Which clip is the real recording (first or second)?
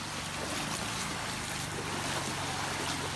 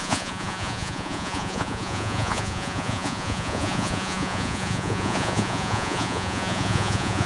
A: first